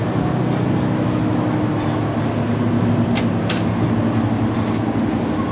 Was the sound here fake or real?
real